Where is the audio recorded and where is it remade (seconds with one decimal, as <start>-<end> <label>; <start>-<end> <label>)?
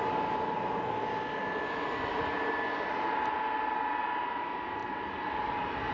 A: 0.0-5.9 recorded